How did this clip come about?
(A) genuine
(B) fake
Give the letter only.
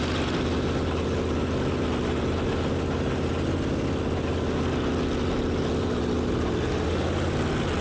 A